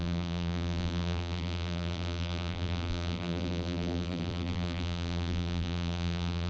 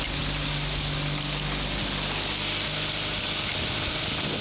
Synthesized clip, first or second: first